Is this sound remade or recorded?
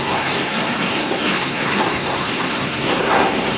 remade